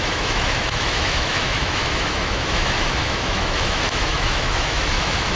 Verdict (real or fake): fake